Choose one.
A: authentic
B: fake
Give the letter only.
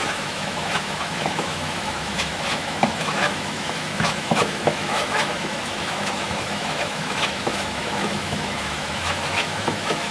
B